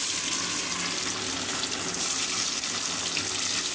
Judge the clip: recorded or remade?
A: recorded